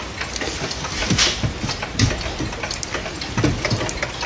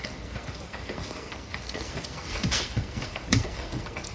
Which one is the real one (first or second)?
first